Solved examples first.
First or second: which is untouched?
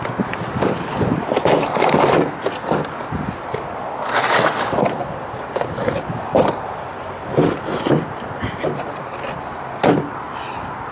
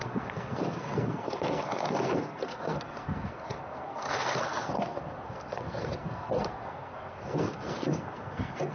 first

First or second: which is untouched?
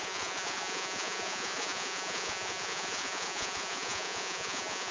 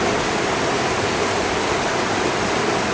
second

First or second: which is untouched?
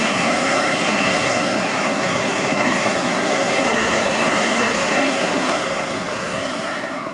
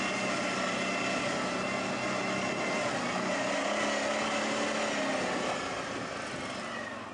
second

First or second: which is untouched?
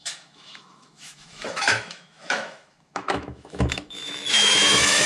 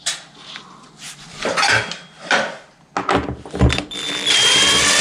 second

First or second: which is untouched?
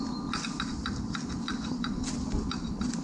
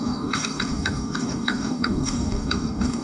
first